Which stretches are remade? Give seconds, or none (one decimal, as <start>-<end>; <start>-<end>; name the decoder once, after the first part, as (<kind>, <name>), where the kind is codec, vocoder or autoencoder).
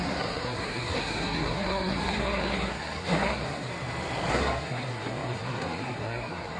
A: 0.0-3.7 (codec, SNAC); 4.3-6.6